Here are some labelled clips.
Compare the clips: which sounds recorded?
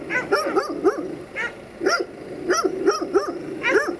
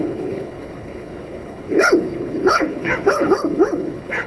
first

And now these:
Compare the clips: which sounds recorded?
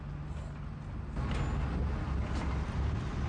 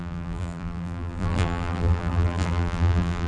first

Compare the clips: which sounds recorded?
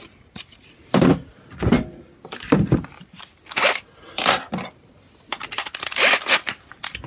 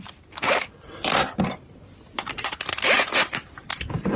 first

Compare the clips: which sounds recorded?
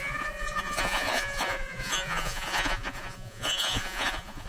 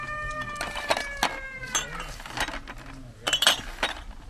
second